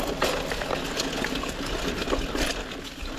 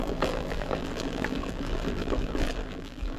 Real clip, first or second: first